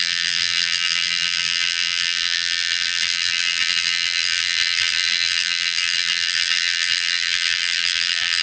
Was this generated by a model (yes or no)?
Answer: yes